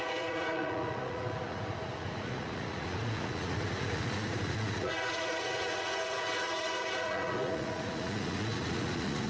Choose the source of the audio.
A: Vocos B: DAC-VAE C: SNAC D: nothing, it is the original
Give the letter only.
A